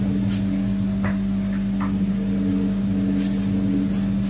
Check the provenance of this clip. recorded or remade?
recorded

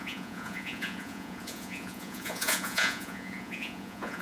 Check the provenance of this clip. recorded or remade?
remade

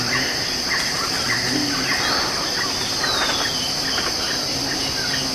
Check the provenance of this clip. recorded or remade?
recorded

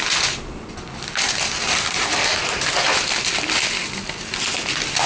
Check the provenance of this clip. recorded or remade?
recorded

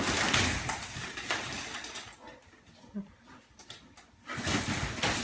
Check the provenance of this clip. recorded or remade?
recorded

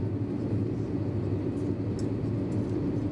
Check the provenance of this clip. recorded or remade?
recorded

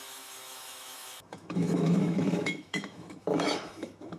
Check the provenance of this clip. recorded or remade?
remade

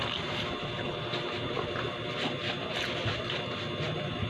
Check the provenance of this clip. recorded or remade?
recorded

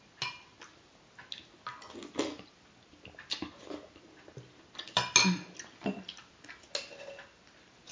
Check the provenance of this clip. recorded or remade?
recorded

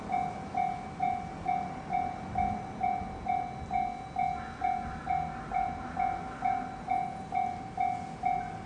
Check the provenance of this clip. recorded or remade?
recorded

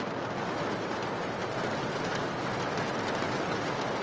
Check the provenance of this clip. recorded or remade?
recorded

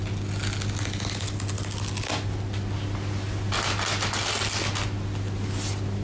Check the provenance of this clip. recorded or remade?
recorded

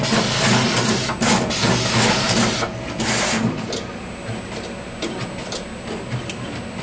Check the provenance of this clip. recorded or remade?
recorded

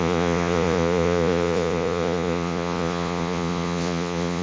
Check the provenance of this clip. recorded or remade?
remade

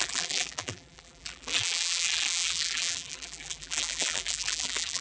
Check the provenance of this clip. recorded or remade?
remade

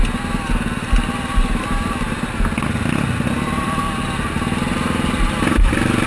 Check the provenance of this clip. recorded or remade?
recorded